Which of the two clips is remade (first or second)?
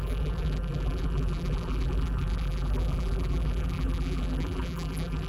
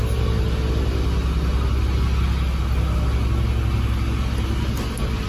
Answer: first